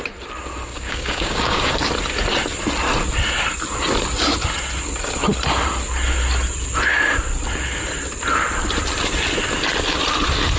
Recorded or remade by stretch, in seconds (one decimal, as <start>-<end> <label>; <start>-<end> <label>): 0.0-0.7 recorded; 0.7-1.7 remade; 1.7-10.6 recorded